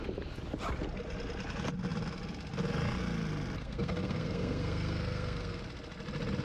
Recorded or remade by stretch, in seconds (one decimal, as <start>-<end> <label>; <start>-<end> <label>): 0.0-3.6 recorded; 3.6-5.6 remade; 5.6-6.4 recorded